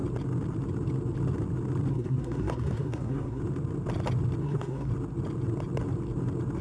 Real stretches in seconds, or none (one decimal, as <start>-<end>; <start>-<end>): 0.0-1.9; 3.4-4.4; 4.9-6.6